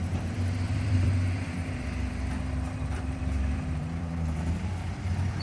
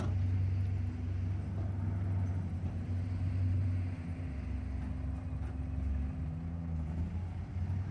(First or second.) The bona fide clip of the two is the second